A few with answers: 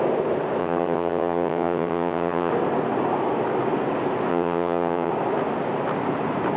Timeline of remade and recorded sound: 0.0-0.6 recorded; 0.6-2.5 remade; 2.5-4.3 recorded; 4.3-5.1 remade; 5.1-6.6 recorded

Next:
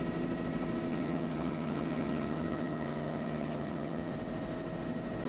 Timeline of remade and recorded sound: 0.0-0.9 recorded; 0.9-4.1 remade; 4.1-5.3 recorded

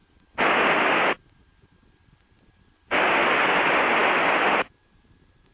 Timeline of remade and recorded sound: 0.0-5.5 recorded